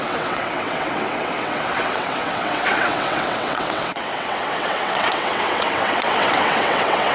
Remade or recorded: remade